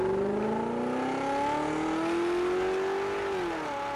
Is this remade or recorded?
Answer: recorded